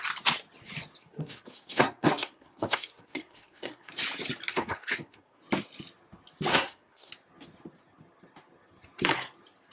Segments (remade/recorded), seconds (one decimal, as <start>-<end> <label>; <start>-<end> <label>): 0.0-1.0 recorded; 1.0-3.9 remade; 3.9-4.5 recorded; 4.5-5.4 remade; 5.4-6.5 recorded; 6.5-7.1 remade; 7.1-9.7 recorded